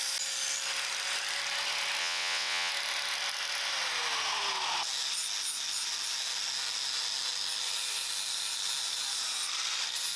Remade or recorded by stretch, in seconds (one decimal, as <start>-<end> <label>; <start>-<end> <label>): 0.0-2.0 recorded; 2.0-2.7 remade; 2.7-10.2 recorded